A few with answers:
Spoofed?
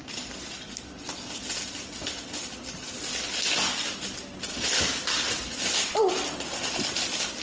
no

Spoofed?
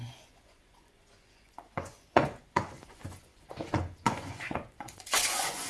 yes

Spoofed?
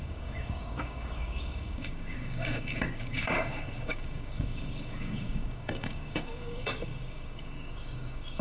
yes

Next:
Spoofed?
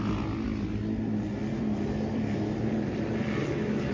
no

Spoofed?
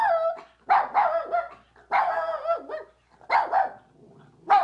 no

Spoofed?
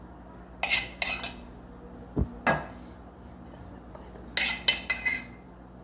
no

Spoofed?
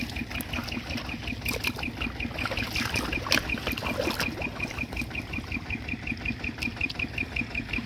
no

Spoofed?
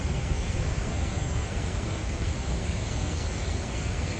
yes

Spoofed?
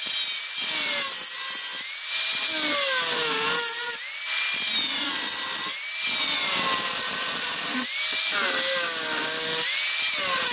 no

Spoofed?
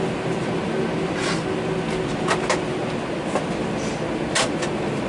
no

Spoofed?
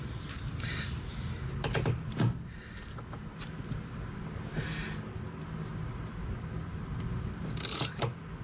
no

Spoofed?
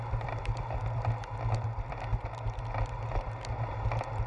no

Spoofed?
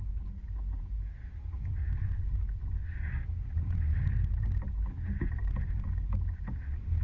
no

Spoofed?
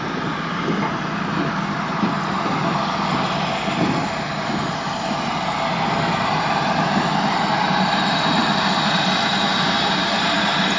no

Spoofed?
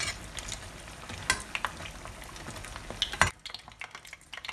no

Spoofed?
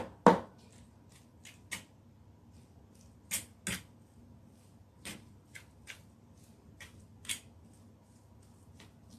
no